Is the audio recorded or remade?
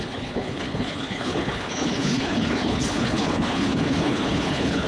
remade